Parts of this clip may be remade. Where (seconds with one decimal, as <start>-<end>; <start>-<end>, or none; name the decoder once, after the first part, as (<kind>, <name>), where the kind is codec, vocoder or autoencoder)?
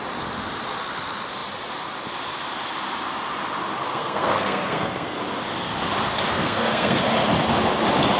3.9-5.2 (codec, SNAC); 6.3-7.0